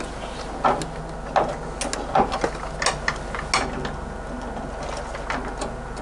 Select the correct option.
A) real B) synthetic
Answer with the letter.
A